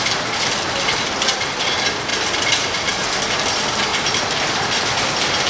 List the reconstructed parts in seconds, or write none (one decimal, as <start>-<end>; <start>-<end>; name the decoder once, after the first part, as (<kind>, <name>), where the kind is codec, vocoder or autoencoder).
2.1-3.3 (vocoder, BigVGAN v2); 3.9-4.8